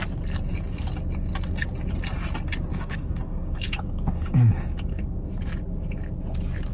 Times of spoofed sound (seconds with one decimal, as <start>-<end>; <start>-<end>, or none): 2.7-5.3